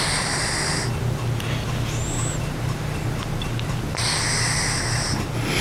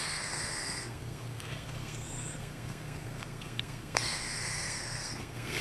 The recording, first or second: first